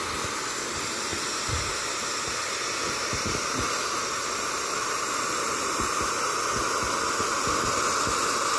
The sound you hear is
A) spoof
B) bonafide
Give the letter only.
B